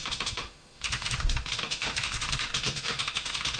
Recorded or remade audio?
remade